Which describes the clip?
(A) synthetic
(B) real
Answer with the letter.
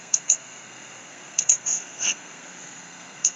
A